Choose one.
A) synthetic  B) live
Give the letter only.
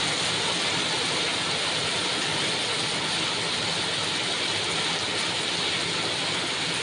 B